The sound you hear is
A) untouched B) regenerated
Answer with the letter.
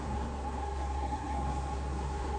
B